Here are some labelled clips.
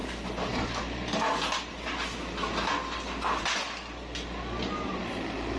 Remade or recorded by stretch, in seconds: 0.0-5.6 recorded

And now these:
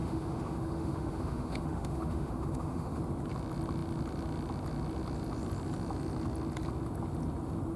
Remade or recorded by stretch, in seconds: 0.0-3.0 remade; 3.0-7.8 recorded

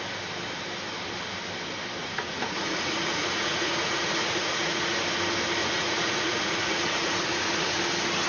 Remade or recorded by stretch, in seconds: 0.0-2.0 recorded; 2.0-5.0 remade; 5.0-5.6 recorded; 5.6-7.8 remade; 7.8-8.3 recorded

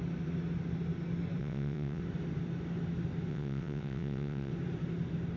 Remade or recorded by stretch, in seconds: 0.0-1.4 recorded; 1.4-2.0 remade; 2.0-3.3 recorded; 3.3-4.5 remade; 4.5-5.4 recorded

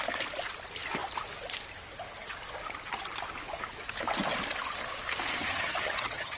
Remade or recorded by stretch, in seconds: 0.0-5.4 recorded; 5.4-6.4 remade

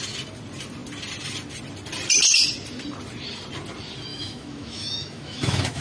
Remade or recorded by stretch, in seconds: 0.0-4.1 recorded; 4.1-5.8 remade

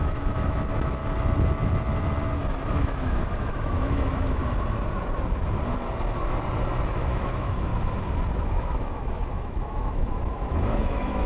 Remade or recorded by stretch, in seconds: 0.0-1.0 remade; 1.0-2.7 recorded; 2.7-4.4 remade; 4.4-6.9 recorded; 6.9-7.7 remade; 7.7-8.4 recorded; 8.4-11.3 remade